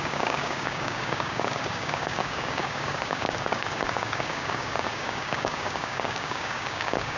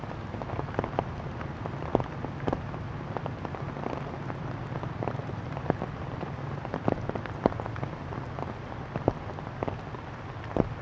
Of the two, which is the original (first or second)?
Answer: second